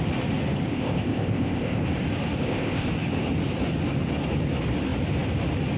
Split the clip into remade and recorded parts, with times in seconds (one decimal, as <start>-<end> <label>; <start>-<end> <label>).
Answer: 0.0-0.7 recorded; 0.7-1.8 remade; 1.8-2.4 recorded; 2.4-2.9 remade; 2.9-5.8 recorded